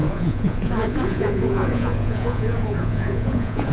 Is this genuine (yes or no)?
no